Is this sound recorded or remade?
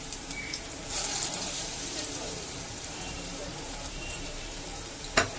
remade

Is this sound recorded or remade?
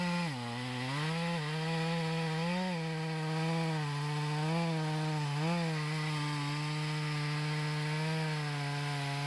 recorded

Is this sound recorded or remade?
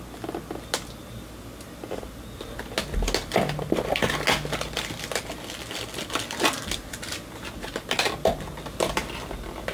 recorded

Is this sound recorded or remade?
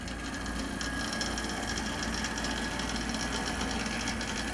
recorded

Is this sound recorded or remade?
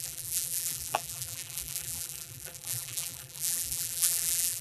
remade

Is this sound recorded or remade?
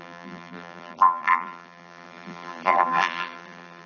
remade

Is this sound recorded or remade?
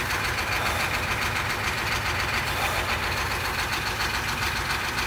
remade